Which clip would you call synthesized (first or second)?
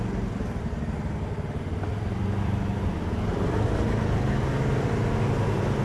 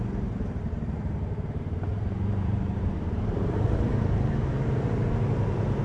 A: second